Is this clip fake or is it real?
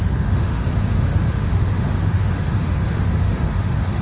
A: fake